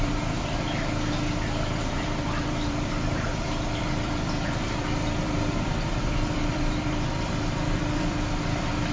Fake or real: fake